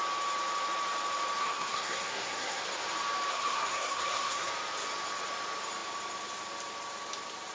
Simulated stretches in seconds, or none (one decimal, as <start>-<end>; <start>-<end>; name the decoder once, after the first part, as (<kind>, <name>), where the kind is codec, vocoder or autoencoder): 1.4-2.6 (codec, SNAC); 3.3-4.5

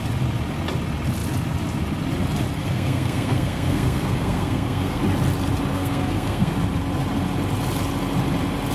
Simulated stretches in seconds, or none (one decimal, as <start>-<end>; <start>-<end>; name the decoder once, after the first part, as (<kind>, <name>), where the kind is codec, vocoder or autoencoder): 2.6-5.0 (codec, SNAC); 5.7-6.5